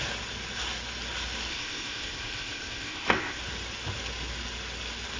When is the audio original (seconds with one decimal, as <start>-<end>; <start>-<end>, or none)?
0.0-1.5; 3.4-5.2